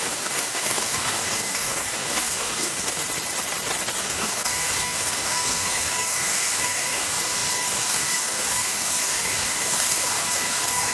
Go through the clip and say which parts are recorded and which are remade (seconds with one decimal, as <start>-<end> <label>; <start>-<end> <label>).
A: 0.0-3.0 remade; 3.0-4.0 recorded; 4.0-10.9 remade